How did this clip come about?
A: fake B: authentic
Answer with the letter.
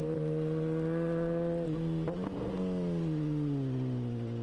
B